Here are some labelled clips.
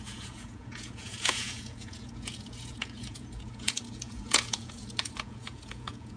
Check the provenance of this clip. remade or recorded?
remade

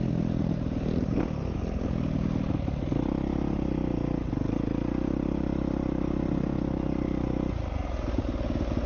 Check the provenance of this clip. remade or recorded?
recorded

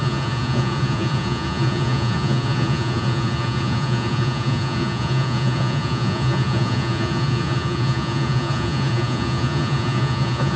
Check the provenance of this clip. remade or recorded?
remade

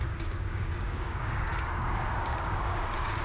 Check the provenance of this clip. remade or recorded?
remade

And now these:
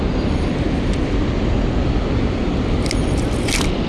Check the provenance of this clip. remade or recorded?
recorded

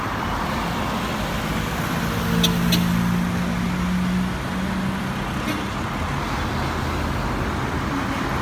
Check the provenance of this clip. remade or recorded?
recorded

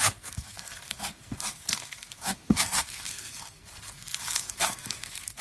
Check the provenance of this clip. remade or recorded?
remade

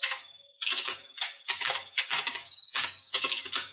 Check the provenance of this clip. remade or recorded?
remade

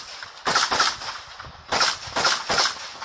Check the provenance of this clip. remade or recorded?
recorded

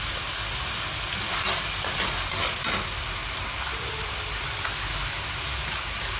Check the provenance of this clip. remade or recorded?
recorded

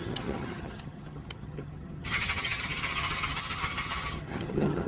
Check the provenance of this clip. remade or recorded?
remade